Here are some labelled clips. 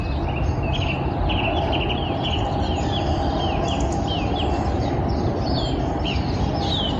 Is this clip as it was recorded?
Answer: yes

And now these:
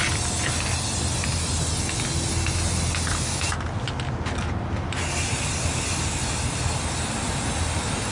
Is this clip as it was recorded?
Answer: yes